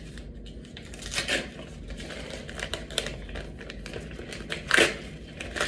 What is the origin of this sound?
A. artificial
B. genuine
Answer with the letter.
B